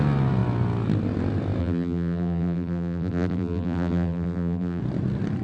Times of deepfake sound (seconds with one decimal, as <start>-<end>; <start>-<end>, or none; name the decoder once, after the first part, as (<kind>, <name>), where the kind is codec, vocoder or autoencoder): 1.6-4.8 (vocoder, BigVGAN v2)